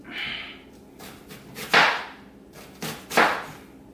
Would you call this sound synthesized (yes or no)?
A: no